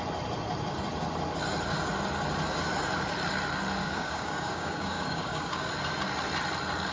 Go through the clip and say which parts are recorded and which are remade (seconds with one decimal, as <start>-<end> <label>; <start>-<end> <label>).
0.0-3.8 recorded; 3.8-5.7 remade; 5.7-6.9 recorded